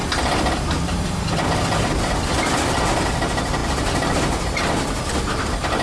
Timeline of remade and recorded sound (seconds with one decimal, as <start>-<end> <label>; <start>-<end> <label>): 0.0-5.8 recorded